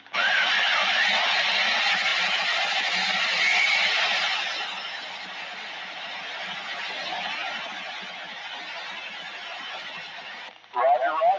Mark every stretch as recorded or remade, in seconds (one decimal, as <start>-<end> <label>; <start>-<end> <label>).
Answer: 0.0-11.4 recorded